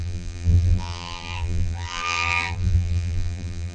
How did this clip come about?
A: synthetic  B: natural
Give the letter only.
A